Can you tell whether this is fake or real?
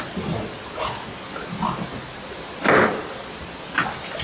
real